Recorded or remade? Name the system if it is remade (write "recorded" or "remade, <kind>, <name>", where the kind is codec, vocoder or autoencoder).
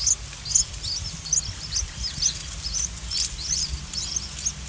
recorded